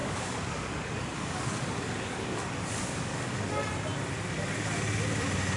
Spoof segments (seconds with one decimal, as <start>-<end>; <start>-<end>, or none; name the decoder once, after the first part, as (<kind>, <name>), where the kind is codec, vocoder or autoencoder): 0.0-3.4 (codec, DAC)